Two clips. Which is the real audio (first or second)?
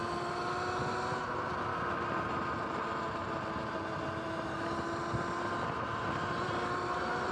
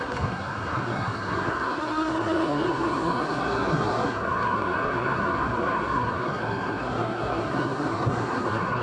first